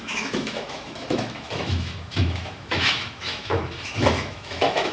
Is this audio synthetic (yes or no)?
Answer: yes